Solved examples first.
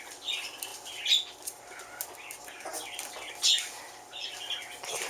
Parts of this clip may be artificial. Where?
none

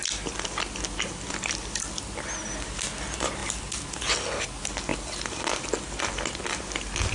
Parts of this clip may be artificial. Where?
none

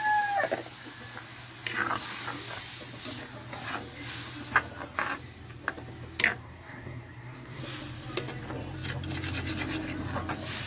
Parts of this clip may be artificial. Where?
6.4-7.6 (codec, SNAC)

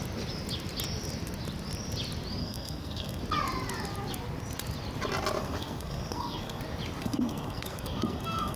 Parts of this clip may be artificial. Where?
2.4-3.2 (codec, SNAC); 5.4-6.6; 7.0-8.6

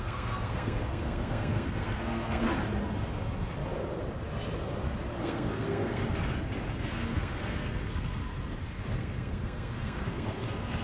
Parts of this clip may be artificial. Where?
0.0-2.5 (codec, SNAC); 5.2-6.0; 6.9-8.2; 8.9-10.8

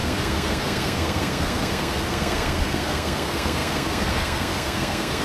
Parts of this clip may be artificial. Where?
0.0-5.2 (codec, SNAC)

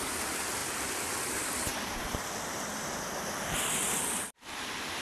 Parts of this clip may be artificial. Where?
none